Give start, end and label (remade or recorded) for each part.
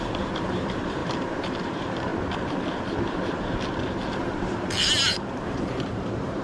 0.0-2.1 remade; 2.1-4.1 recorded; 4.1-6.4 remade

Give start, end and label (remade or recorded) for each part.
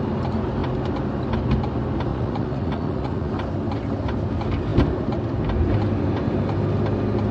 0.0-2.1 recorded; 2.1-3.3 remade; 3.3-7.3 recorded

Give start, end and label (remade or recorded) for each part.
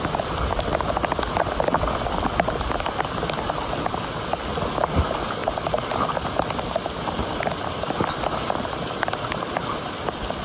0.0-10.4 remade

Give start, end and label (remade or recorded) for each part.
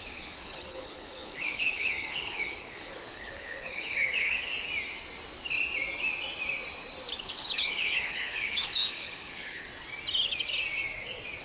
0.0-4.5 remade; 4.5-7.2 recorded; 7.2-9.7 remade; 9.7-11.4 recorded